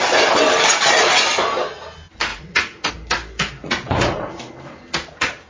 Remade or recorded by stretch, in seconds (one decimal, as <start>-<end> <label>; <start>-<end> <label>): 0.0-2.3 recorded; 2.3-2.9 remade; 2.9-3.6 recorded; 3.6-4.3 remade; 4.3-5.5 recorded